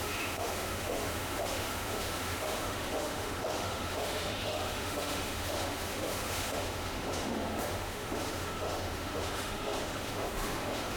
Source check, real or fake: fake